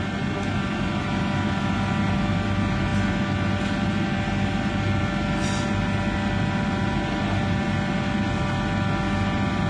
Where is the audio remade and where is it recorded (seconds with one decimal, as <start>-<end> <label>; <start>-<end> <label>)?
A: 0.0-9.7 recorded